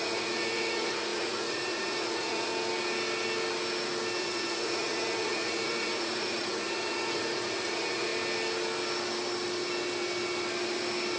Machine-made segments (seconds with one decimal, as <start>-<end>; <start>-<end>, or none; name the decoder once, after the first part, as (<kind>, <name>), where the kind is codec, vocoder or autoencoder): 0.0-2.5 (vocoder, Vocos); 4.2-8.1